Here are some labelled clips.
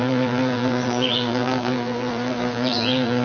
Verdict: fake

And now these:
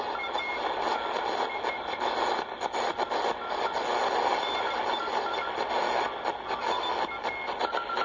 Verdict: real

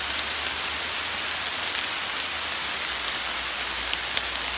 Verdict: real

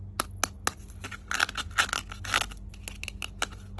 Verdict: real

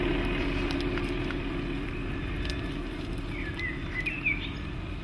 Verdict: real